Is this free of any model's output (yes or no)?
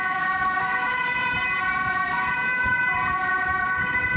no